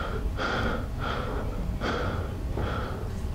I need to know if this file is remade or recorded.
remade